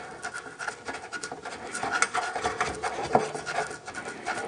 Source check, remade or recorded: recorded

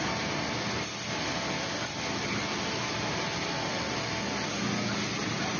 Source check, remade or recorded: recorded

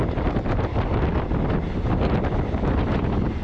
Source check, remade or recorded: recorded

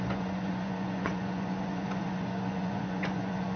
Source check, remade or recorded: remade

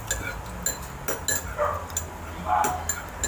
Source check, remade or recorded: recorded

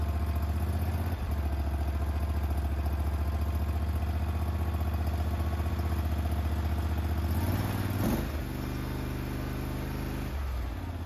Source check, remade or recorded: recorded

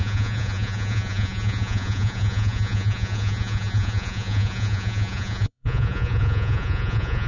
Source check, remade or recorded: remade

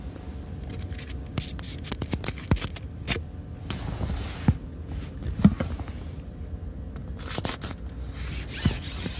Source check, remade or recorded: recorded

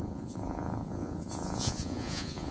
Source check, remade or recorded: remade